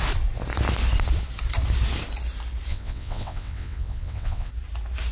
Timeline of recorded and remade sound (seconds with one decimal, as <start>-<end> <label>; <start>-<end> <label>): 0.0-2.7 recorded; 2.7-4.5 remade; 4.5-5.1 recorded